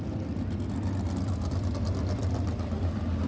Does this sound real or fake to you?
real